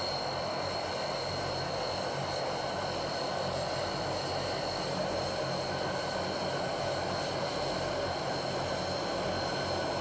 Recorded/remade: recorded